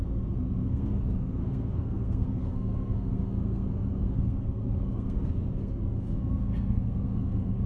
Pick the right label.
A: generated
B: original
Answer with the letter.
A